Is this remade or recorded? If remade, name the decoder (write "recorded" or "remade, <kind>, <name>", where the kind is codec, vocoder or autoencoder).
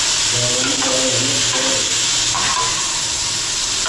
recorded